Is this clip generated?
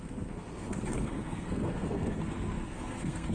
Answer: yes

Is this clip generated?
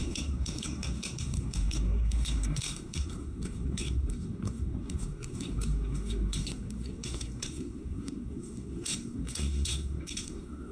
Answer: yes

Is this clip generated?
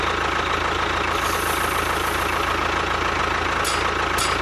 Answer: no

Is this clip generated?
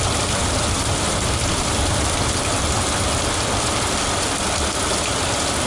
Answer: no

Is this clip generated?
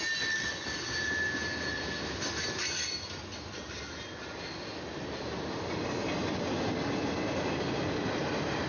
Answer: no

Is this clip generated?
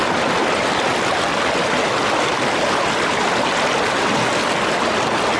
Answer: no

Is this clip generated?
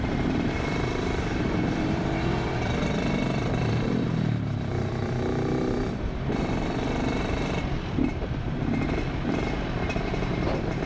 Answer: yes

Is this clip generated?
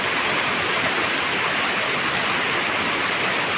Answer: no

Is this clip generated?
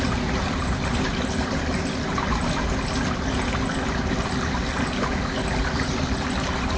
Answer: no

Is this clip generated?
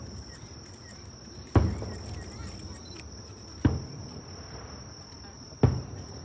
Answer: no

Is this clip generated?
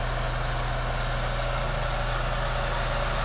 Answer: no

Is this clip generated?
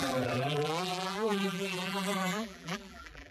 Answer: yes